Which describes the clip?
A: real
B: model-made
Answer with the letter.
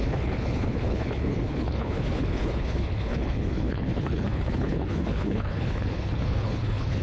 B